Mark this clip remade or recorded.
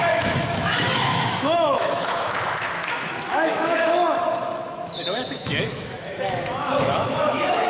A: remade